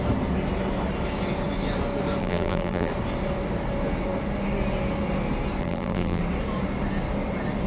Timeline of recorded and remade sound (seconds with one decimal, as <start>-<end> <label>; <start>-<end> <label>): 0.0-2.2 recorded; 2.2-2.9 remade; 2.9-5.6 recorded; 5.6-6.2 remade; 6.2-7.7 recorded